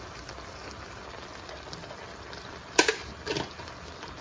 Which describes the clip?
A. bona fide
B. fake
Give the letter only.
A